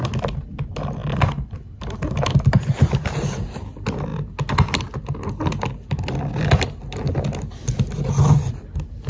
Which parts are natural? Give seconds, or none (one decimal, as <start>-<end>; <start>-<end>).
0.0-9.1